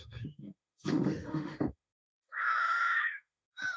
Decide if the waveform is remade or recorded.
remade